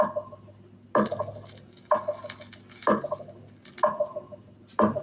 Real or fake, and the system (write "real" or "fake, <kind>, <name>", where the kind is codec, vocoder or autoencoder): real